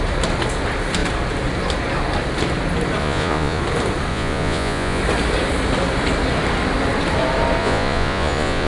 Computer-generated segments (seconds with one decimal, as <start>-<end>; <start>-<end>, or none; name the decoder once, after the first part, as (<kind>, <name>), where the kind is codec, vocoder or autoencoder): 3.0-3.6 (vocoder, Vocos); 4.1-5.0; 7.6-8.7